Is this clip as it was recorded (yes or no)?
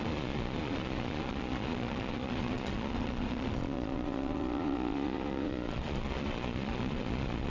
no